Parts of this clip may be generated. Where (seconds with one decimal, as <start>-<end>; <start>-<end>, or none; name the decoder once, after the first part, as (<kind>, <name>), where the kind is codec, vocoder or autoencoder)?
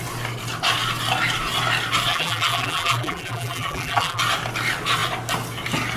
2.1-4.2 (vocoder, BigVGAN v2)